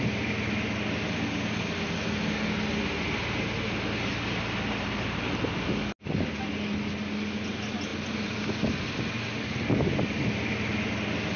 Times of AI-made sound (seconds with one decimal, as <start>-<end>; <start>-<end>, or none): none